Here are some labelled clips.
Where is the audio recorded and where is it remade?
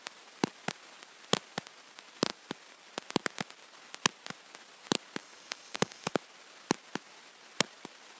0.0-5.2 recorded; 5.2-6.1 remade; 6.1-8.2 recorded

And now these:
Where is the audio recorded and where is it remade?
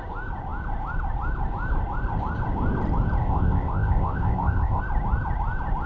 0.0-3.2 recorded; 3.2-4.8 remade; 4.8-5.9 recorded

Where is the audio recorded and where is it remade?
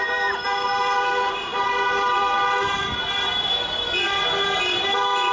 0.0-5.3 recorded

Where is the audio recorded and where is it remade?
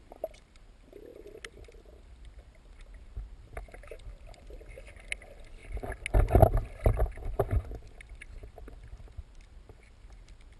0.0-10.6 recorded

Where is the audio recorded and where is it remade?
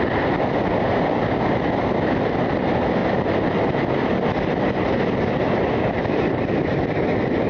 0.0-3.0 recorded; 3.0-3.7 remade; 3.7-7.5 recorded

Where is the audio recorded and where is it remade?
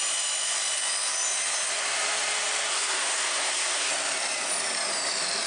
0.0-2.7 recorded; 2.7-3.9 remade; 3.9-5.5 recorded